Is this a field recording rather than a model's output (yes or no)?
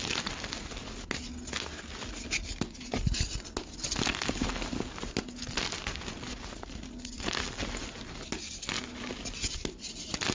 yes